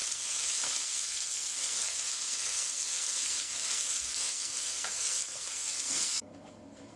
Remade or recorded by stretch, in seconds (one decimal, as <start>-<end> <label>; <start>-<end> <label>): 0.0-7.0 remade